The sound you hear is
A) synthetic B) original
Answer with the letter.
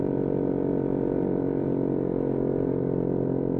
B